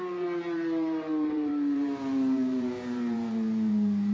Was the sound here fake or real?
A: fake